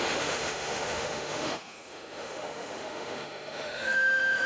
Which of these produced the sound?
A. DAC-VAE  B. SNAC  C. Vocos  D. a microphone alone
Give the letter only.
A